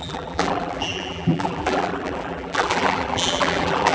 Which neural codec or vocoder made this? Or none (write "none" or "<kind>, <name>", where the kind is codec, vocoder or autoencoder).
vocoder, BigVGAN v2